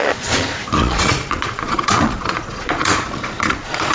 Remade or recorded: remade